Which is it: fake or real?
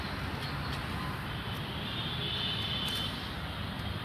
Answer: real